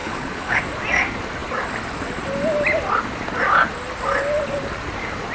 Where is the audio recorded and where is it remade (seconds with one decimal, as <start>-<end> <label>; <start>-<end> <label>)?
0.0-0.6 remade; 0.6-5.3 recorded